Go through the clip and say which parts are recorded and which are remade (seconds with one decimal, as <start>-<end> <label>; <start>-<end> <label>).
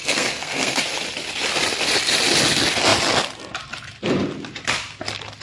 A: 0.0-0.8 remade; 0.8-5.4 recorded